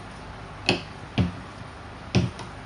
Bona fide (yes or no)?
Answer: yes